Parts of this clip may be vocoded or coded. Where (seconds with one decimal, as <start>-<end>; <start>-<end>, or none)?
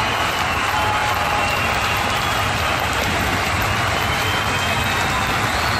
1.0-4.5